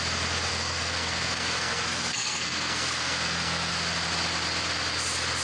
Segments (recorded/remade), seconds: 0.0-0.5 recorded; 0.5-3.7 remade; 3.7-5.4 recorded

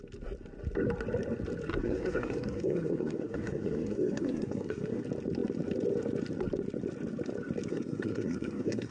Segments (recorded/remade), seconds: 0.0-1.8 recorded; 1.8-5.0 remade; 5.0-7.7 recorded; 7.7-8.9 remade

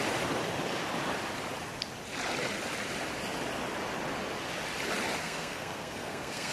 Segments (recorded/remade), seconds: 0.0-5.2 recorded; 5.2-6.5 remade

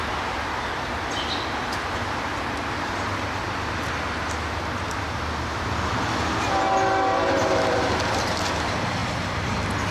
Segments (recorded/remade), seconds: 0.0-9.9 recorded

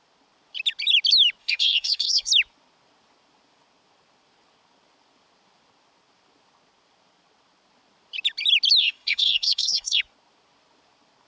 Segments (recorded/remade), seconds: 0.0-1.4 recorded; 1.4-2.3 remade; 2.3-8.8 recorded; 8.8-10.0 remade; 10.0-11.3 recorded

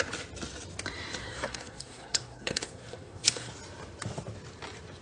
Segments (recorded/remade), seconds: 0.0-1.2 recorded; 1.2-3.5 remade; 3.5-5.0 recorded

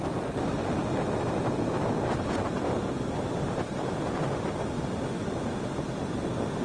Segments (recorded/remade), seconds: 0.0-6.6 recorded